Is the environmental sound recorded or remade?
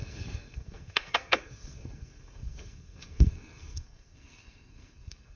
remade